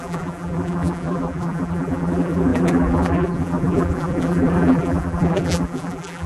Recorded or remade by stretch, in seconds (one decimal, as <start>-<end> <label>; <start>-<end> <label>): 0.0-6.3 remade

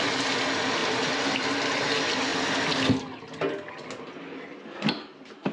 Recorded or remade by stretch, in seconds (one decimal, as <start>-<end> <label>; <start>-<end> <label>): 0.0-5.5 recorded